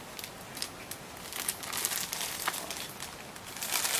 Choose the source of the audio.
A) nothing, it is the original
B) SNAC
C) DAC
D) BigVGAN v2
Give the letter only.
A